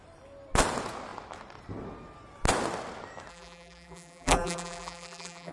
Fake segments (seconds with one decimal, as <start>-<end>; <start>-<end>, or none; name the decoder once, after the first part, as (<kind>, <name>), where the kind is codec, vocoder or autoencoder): 3.3-5.5 (vocoder, BigVGAN v2)